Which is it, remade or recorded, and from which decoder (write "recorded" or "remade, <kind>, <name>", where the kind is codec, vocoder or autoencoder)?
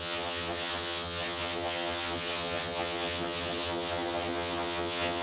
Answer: remade, vocoder, HiFi-GAN